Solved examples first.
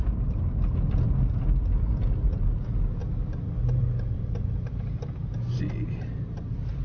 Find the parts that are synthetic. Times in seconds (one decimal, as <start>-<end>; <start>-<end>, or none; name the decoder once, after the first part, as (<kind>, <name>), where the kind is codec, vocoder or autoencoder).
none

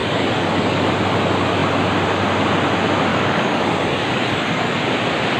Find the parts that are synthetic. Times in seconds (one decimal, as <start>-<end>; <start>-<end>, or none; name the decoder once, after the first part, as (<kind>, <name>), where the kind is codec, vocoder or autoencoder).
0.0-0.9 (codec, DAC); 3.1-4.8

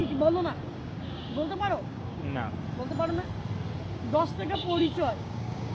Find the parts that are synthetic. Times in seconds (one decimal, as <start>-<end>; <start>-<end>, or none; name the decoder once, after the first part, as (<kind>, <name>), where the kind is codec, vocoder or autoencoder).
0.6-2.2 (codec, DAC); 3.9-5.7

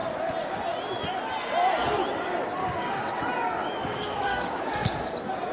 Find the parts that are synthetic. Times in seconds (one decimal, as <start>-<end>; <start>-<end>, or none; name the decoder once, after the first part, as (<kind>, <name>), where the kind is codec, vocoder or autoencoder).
2.6-3.1 (codec, DAC); 3.8-4.6